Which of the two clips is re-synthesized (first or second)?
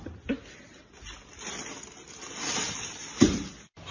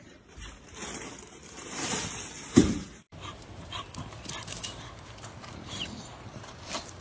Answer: second